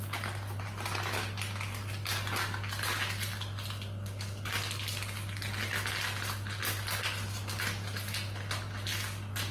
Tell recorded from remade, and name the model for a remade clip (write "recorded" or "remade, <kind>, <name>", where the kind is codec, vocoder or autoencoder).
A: recorded